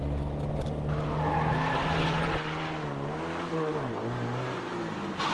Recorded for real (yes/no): yes